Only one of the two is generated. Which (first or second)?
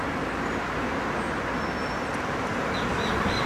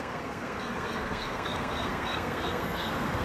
second